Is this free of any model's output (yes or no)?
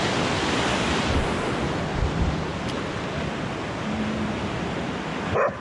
yes